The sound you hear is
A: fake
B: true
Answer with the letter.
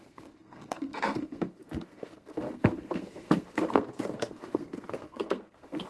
A